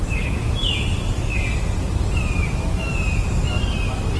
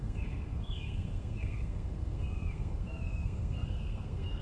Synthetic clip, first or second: second